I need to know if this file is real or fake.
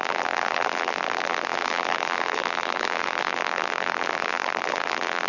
fake